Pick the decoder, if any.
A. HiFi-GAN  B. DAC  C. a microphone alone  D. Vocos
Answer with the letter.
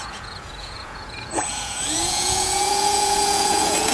D